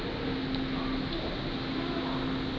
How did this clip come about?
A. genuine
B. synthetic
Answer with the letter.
A